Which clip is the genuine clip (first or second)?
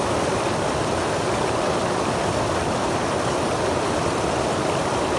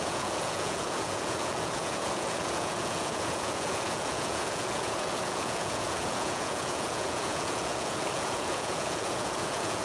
first